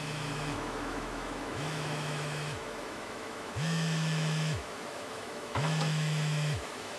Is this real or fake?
fake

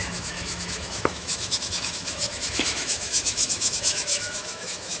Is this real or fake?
fake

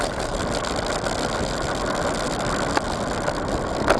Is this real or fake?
real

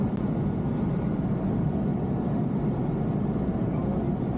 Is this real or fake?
real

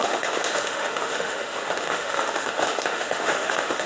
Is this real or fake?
fake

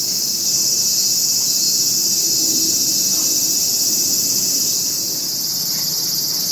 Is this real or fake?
real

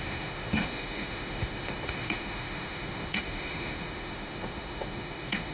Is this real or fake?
fake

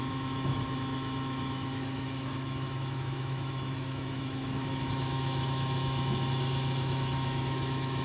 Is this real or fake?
fake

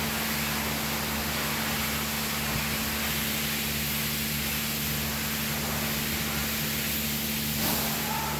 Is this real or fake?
real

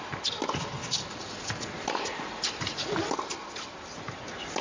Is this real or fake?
real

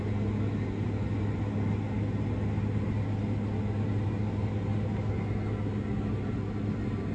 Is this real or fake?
real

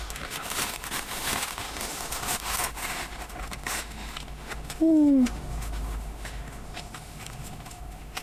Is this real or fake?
fake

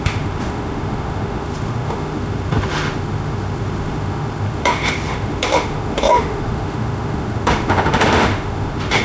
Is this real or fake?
fake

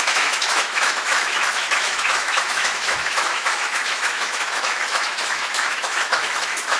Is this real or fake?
fake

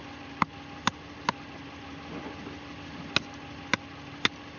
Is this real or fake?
real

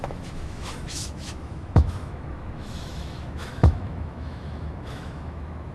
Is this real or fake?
fake